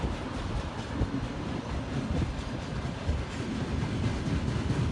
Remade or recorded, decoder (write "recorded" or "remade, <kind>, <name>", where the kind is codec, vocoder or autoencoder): recorded